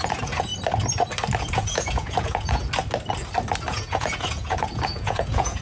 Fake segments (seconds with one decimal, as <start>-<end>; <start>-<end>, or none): 0.0-0.5; 1.4-2.6; 3.7-5.6